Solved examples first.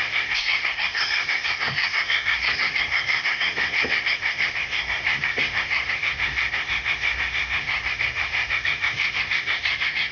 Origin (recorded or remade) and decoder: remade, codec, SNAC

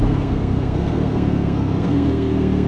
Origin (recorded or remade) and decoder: remade, codec, SNAC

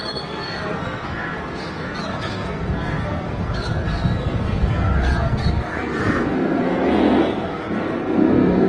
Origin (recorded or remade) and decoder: remade, codec, SNAC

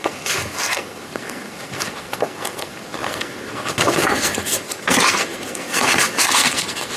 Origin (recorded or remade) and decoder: remade, codec, SNAC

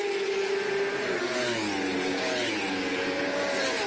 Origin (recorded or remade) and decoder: recorded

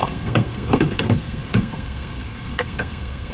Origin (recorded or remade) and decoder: remade, codec, SNAC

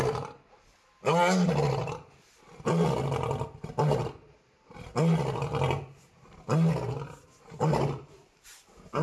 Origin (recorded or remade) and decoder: recorded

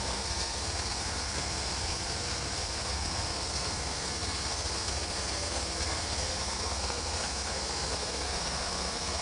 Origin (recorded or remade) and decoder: remade, codec, SNAC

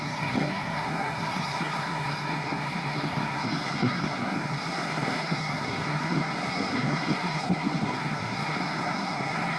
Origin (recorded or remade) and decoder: remade, codec, SNAC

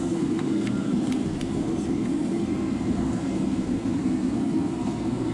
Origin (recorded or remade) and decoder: remade, codec, SNAC